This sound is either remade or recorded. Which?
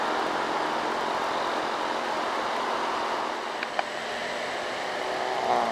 recorded